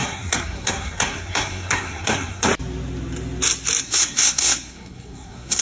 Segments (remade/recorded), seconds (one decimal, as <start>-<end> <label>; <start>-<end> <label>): 0.0-2.5 remade; 2.5-3.8 recorded; 3.8-5.6 remade

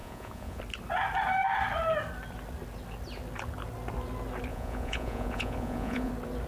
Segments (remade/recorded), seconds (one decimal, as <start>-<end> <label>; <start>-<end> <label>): 0.0-0.6 remade; 0.6-4.5 recorded; 4.5-6.1 remade; 6.1-6.5 recorded

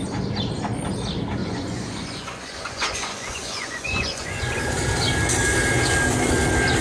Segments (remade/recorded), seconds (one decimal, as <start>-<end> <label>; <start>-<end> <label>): 0.0-1.4 recorded; 1.4-4.8 remade; 4.8-6.8 recorded

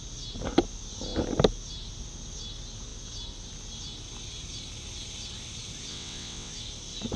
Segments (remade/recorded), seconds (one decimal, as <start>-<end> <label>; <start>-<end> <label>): 0.0-5.9 recorded; 5.9-6.5 remade; 6.5-7.2 recorded

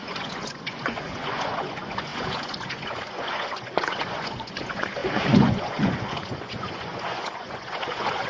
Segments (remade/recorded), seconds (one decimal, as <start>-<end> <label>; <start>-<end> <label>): 0.0-8.3 remade

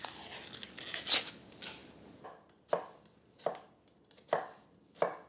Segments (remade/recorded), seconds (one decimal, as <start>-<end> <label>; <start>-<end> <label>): 0.0-5.3 recorded

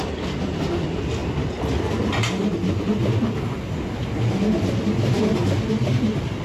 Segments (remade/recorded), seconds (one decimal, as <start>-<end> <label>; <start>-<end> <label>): 0.0-6.4 recorded